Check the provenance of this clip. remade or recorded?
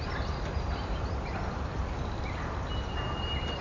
recorded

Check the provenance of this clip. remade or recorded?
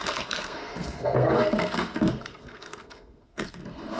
remade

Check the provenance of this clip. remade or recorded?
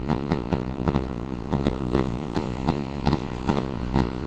remade